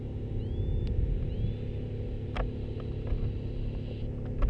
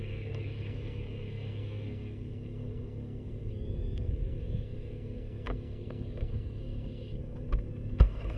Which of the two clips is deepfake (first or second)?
second